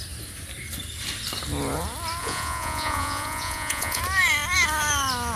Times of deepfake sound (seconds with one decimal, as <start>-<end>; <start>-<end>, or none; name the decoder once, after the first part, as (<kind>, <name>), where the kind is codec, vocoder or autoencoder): 2.2-4.0 (vocoder, Vocos)